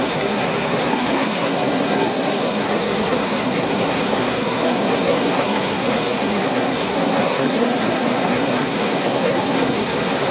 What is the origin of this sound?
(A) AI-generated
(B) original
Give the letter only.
A